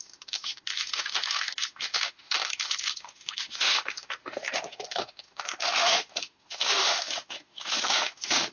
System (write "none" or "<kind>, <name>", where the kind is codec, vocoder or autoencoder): autoencoder, DAC-VAE